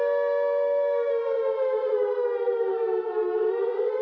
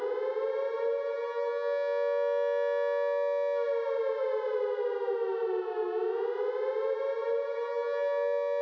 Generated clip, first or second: first